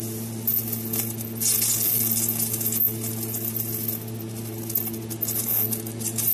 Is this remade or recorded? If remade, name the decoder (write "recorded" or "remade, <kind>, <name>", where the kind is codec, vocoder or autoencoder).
recorded